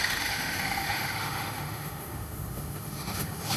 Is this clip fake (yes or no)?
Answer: yes